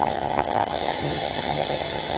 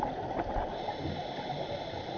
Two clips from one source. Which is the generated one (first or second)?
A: first